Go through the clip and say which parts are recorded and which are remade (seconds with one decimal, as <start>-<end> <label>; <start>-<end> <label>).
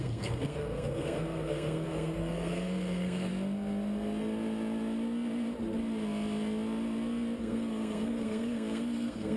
0.0-3.3 remade; 3.3-7.4 recorded; 7.4-9.4 remade